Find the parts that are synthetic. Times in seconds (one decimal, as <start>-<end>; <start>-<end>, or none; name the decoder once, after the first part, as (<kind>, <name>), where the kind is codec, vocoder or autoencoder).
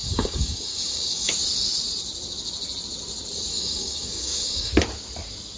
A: 0.0-1.3 (codec, DAC); 3.5-4.7